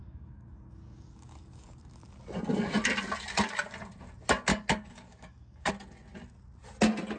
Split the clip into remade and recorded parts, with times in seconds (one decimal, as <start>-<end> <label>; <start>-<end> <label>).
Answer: 0.0-2.0 remade; 2.0-4.5 recorded; 4.5-5.7 remade; 5.7-7.2 recorded